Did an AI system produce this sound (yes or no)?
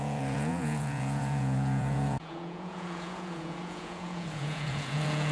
yes